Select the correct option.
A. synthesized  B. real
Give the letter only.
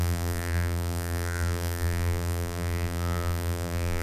A